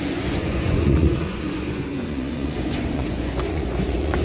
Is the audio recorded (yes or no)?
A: no